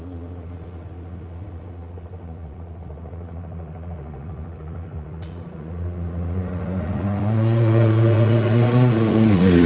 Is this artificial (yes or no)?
yes